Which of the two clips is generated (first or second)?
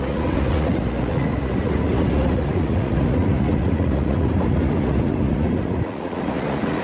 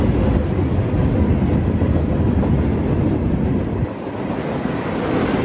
first